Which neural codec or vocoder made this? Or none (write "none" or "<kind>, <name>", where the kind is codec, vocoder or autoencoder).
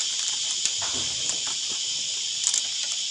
none